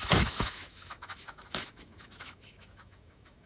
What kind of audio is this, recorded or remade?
remade